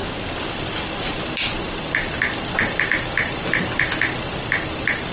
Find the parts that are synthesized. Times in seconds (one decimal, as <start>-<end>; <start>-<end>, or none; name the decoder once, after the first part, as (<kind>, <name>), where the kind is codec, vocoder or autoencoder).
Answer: none